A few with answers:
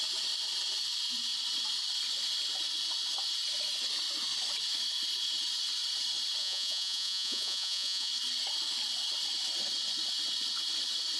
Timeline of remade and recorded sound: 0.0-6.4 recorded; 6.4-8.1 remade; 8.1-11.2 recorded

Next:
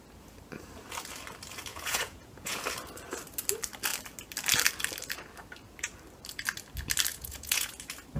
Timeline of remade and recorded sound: 0.0-1.7 recorded; 1.7-2.6 remade; 2.6-7.1 recorded; 7.1-7.7 remade; 7.7-8.2 recorded

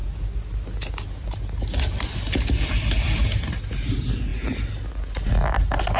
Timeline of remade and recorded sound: 0.0-6.0 recorded

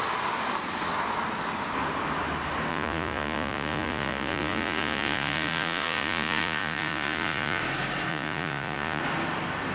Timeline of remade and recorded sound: 0.0-2.7 recorded; 2.7-7.6 remade; 7.6-8.1 recorded; 8.1-9.0 remade; 9.0-9.7 recorded

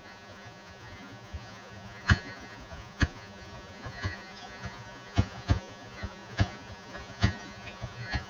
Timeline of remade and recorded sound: 0.0-8.3 remade

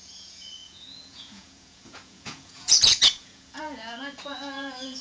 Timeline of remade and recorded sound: 0.0-5.0 remade

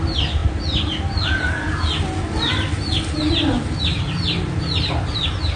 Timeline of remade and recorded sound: 0.0-5.6 recorded

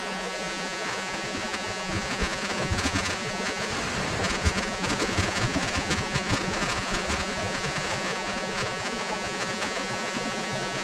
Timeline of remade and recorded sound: 0.0-3.7 remade; 3.7-4.2 recorded; 4.2-10.8 remade